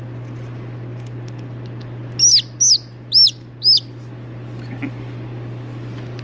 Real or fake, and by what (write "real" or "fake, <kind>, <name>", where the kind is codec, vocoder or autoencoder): real